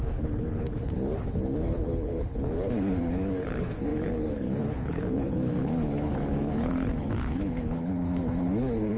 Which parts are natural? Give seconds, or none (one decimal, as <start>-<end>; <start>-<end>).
none